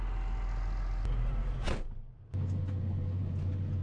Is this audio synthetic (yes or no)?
no